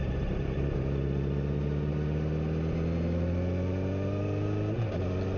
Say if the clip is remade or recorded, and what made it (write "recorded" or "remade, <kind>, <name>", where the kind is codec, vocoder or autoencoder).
recorded